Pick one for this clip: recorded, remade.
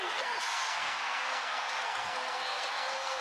remade